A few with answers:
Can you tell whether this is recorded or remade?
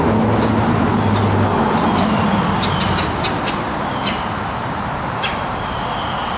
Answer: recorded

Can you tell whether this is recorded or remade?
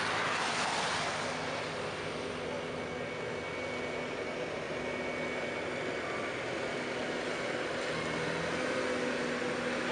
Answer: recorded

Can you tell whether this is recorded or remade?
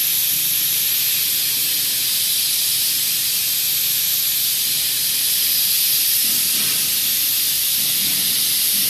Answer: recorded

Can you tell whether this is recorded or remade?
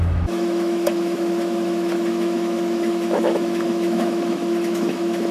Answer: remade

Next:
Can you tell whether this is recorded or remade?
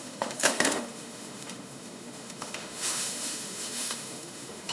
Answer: remade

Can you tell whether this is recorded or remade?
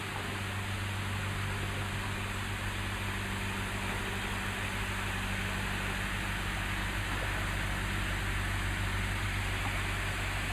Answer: recorded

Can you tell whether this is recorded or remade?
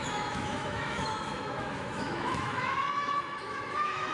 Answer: remade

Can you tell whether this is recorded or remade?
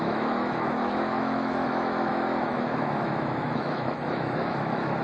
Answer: remade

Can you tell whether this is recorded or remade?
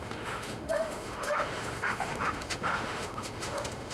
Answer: remade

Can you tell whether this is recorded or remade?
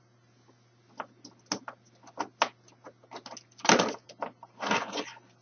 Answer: recorded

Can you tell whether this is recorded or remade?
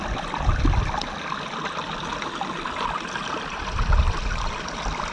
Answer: recorded